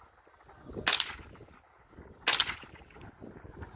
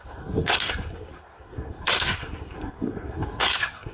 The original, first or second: first